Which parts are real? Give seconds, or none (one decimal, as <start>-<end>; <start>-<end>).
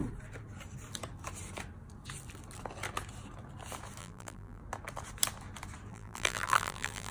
0.0-4.0; 4.6-5.9